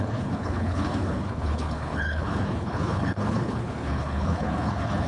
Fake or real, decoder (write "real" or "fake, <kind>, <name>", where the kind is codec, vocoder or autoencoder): fake, codec, HILCodec